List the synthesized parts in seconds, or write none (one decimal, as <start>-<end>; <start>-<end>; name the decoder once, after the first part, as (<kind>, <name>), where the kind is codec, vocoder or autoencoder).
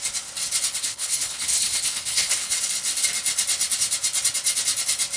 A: 0.8-2.5 (codec, HILCodec)